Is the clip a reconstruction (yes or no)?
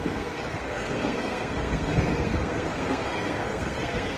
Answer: yes